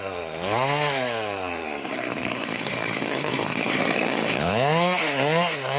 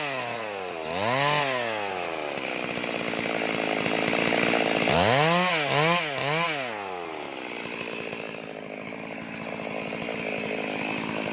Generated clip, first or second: first